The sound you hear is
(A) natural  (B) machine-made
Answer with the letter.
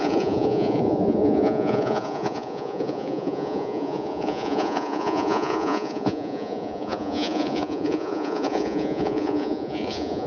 B